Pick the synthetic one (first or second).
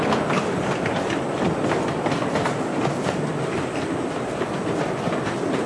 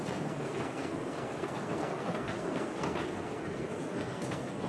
second